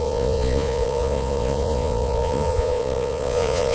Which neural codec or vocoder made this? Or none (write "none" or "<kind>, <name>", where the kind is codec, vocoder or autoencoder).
vocoder, Vocos